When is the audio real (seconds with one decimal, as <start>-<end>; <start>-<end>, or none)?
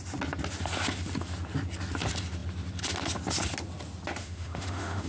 0.0-4.2